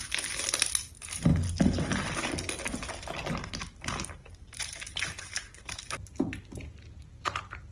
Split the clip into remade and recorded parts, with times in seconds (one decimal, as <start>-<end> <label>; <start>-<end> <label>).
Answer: 0.0-4.2 recorded; 4.2-4.9 remade; 4.9-7.7 recorded